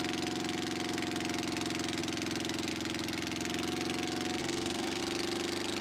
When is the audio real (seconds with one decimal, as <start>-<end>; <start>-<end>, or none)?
0.0-4.4; 5.0-5.8